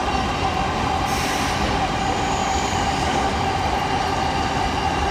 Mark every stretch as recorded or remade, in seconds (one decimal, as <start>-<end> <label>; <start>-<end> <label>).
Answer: 0.0-2.4 recorded; 2.4-3.5 remade; 3.5-5.1 recorded